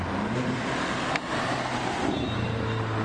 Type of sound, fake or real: real